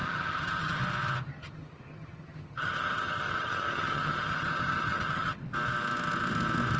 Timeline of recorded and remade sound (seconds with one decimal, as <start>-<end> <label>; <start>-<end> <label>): 0.0-0.8 remade; 0.8-1.3 recorded; 1.3-5.4 remade; 5.4-6.8 recorded